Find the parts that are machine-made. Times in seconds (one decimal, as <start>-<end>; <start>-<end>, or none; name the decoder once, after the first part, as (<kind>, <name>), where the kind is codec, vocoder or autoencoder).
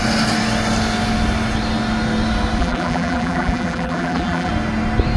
2.6-4.5 (vocoder, BigVGAN v2)